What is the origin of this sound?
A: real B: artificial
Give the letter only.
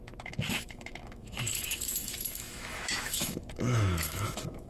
B